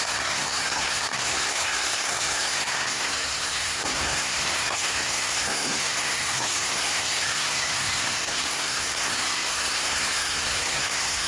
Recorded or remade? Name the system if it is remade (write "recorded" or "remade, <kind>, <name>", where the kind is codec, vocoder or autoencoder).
remade, codec, SNAC